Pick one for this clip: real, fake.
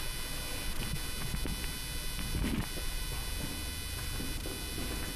real